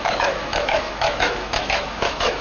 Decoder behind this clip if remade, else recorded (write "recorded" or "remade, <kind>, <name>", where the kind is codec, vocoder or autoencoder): remade, autoencoder, DAC-VAE